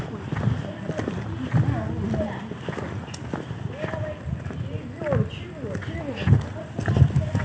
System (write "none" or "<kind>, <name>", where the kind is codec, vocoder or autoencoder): none